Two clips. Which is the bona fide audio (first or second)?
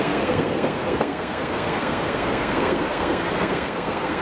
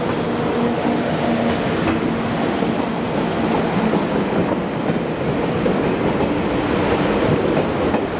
second